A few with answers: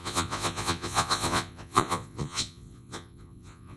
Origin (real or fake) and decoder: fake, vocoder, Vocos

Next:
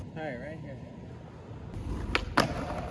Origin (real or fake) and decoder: real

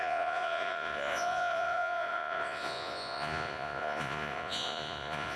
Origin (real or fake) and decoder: fake, vocoder, Vocos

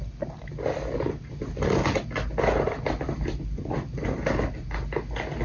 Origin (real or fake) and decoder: real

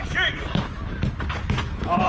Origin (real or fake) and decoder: real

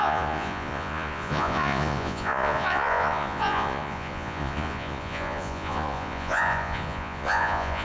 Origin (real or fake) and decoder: fake, vocoder, Vocos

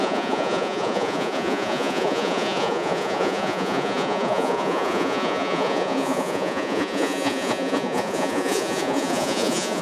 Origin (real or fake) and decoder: fake, vocoder, Vocos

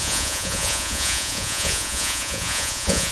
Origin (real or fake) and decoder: fake, vocoder, Vocos